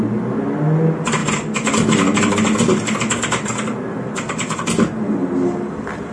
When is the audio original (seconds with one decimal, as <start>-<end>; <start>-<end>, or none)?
0.0-6.1